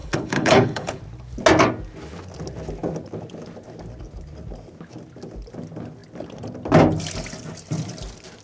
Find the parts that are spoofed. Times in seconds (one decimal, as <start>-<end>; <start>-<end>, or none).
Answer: 0.0-1.0